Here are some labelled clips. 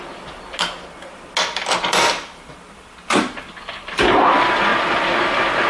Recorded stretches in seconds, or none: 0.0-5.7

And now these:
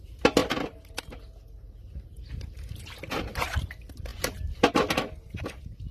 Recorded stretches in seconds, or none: 0.0-5.9

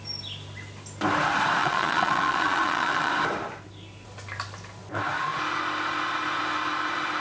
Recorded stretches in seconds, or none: 0.0-1.6; 3.1-7.2

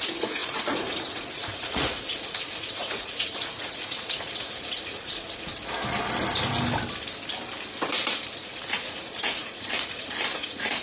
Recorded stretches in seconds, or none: 5.5-8.4